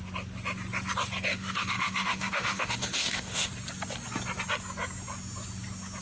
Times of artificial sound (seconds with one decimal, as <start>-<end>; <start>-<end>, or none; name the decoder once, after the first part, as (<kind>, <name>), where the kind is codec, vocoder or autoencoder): 1.3-3.5 (autoencoder, DAC-VAE)